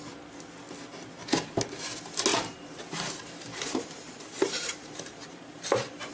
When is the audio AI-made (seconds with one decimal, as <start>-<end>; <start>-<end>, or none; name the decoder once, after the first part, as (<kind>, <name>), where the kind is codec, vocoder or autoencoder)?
2.3-6.1 (vocoder, BigVGAN v2)